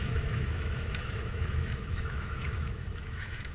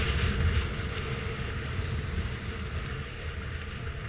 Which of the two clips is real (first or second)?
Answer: second